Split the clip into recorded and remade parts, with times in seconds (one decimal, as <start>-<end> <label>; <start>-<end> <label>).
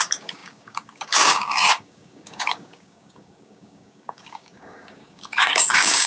0.0-6.1 remade